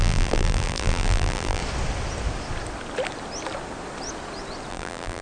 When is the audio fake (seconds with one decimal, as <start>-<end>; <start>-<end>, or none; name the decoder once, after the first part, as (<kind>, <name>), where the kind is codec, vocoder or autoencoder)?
0.0-1.6 (vocoder, BigVGAN v2); 4.7-5.2